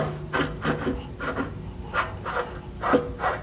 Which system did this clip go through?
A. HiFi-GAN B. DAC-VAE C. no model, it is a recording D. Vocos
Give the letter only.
C